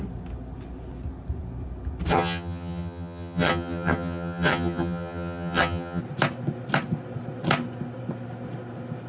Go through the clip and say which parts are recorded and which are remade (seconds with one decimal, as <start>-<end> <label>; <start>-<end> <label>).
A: 0.0-2.1 recorded; 2.1-6.0 remade; 6.0-9.1 recorded